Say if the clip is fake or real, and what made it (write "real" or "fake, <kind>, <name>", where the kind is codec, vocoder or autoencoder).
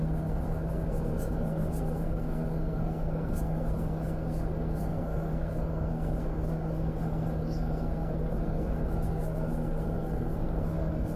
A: fake, codec, SNAC